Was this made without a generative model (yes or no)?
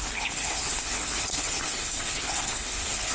no